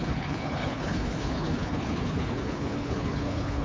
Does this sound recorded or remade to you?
remade